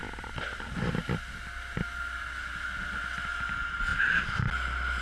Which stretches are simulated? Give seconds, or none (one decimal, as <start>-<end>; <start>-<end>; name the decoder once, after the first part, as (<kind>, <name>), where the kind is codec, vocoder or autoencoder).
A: none